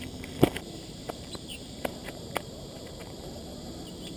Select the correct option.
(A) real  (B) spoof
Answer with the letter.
B